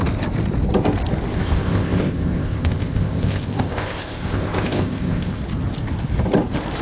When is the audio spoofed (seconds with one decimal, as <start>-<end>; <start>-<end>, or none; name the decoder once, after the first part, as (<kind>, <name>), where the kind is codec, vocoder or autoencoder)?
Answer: 1.3-5.4 (codec, ZipCodec)